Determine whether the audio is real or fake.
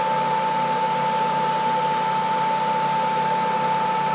real